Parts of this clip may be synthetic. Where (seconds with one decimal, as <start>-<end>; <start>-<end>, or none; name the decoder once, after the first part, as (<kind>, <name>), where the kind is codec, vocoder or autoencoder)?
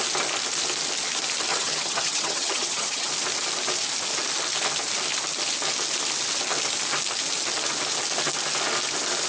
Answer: 1.5-3.1 (vocoder, HiFi-GAN)